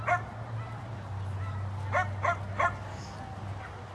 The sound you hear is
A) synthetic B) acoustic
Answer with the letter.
B